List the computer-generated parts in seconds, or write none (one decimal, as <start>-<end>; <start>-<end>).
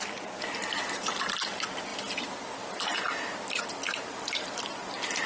1.9-5.3